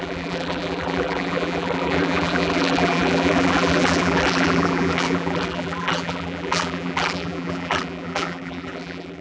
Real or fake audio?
fake